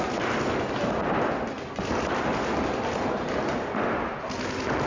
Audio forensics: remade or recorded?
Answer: recorded